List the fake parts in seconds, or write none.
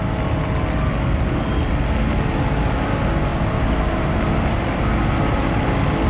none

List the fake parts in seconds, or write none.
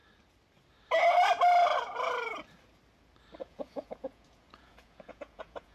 3.4-5.7 (vocoder, Vocos)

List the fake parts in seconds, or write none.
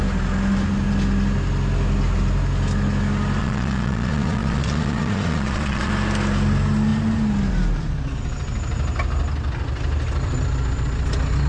3.4-5.9 (vocoder, Vocos)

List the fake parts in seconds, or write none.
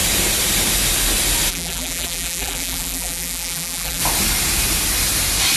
1.5-4.0 (vocoder, BigVGAN v2)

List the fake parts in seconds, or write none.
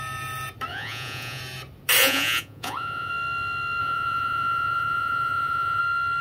0.7-1.4 (vocoder, Vocos); 2.0-3.1; 3.8-5.8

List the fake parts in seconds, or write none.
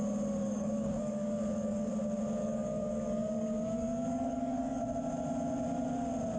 0.4-1.9 (codec, DAC); 2.4-4.8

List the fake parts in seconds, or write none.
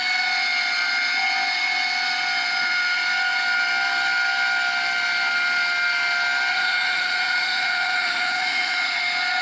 6.5-9.0 (vocoder, Vocos)